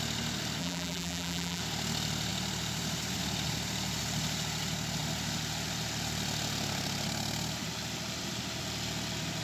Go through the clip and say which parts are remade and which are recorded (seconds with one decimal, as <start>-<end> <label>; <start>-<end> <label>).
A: 0.0-0.6 recorded; 0.6-1.6 remade; 1.6-9.4 recorded